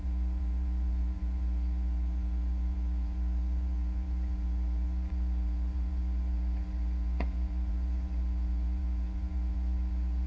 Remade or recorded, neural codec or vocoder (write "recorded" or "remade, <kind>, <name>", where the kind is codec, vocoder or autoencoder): remade, vocoder, Vocos